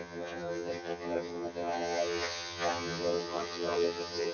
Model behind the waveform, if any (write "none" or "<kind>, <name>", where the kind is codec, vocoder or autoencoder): vocoder, HiFi-GAN